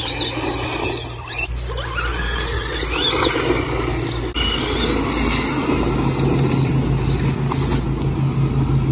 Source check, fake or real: real